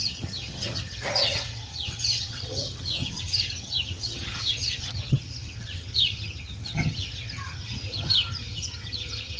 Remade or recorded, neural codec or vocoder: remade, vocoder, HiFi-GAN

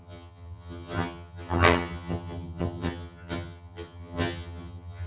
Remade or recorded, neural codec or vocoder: remade, vocoder, HiFi-GAN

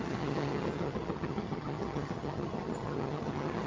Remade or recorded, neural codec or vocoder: remade, vocoder, HiFi-GAN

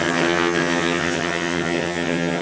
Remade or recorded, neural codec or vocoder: remade, vocoder, HiFi-GAN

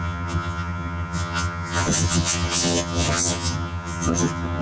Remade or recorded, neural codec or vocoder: remade, vocoder, HiFi-GAN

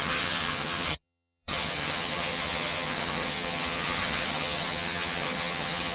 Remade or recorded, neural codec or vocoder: remade, vocoder, HiFi-GAN